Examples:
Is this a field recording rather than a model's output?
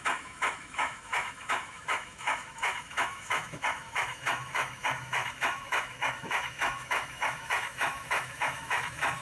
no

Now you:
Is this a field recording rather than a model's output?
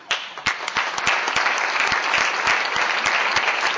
yes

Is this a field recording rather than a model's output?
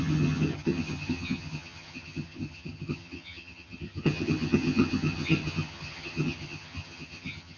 no